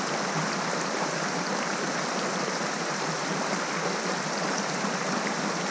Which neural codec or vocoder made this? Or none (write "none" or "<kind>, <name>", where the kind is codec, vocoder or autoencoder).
none